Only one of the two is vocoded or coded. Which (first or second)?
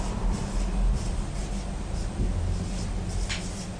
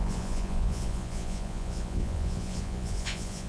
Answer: second